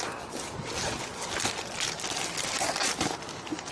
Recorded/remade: recorded